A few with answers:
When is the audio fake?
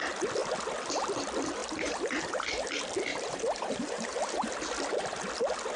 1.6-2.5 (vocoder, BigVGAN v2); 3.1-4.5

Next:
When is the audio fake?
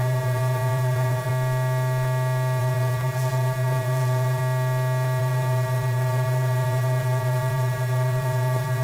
0.0-1.3 (vocoder, BigVGAN v2); 2.6-4.4; 5.2-8.8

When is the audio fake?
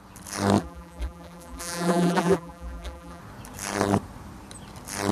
0.6-3.2 (vocoder, BigVGAN v2)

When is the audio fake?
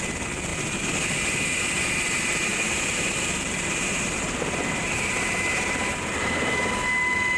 2.5-6.0 (vocoder, BigVGAN v2)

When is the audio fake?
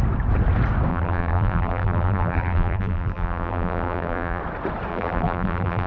0.9-4.4 (vocoder, BigVGAN v2); 4.9-5.9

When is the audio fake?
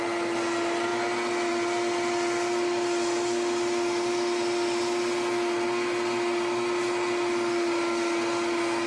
none